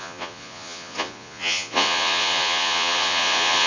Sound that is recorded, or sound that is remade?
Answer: remade